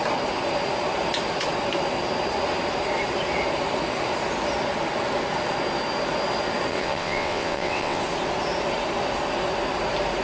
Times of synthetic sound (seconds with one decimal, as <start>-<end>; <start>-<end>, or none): 6.7-8.0